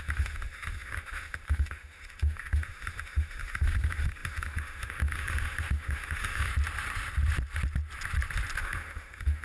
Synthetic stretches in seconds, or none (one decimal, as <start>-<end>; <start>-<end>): 0.0-6.5; 8.6-9.4